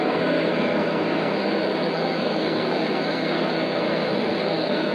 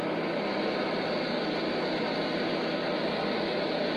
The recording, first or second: second